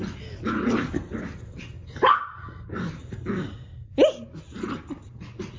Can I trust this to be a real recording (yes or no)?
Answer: yes